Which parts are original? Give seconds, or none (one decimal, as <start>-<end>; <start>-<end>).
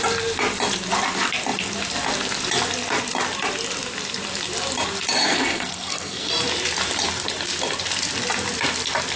0.0-5.2; 6.3-9.2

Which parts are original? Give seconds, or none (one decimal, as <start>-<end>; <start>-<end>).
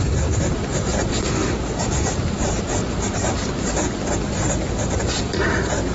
1.4-2.0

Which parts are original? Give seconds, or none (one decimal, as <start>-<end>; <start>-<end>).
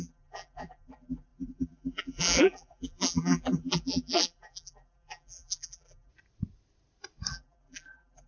6.1-7.3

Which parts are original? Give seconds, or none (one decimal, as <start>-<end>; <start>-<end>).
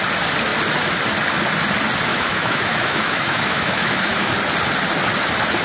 0.0-2.1; 4.3-5.6